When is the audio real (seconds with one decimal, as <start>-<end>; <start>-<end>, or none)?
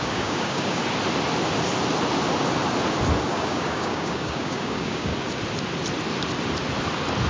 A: 0.8-3.3; 5.1-7.3